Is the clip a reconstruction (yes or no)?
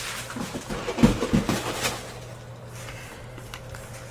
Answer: no